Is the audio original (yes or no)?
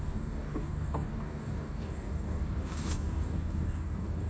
no